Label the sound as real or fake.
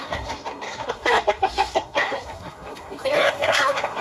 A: fake